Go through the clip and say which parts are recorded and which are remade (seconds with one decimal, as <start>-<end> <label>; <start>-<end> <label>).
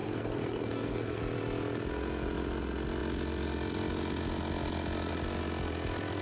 0.0-1.2 remade; 1.2-6.2 recorded